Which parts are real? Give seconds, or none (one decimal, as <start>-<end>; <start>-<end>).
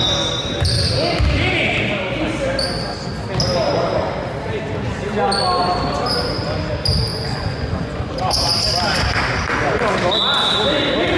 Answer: 0.0-7.1; 8.1-11.2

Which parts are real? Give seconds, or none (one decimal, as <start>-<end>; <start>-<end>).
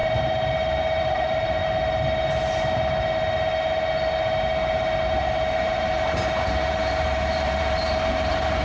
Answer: 0.0-1.0; 1.6-5.6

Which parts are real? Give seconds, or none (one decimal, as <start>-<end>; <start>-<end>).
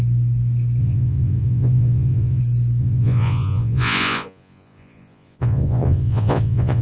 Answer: 0.0-0.8; 2.4-2.8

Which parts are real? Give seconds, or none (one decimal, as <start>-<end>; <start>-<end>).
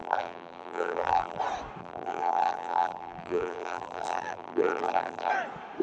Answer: 1.4-1.8; 5.3-5.8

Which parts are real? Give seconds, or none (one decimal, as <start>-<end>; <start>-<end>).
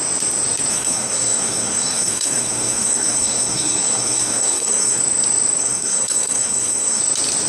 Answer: 0.0-0.7; 5.0-5.6; 7.0-7.5